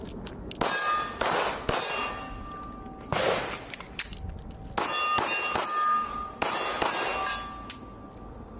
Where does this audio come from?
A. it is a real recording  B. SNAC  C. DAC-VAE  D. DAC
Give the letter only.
A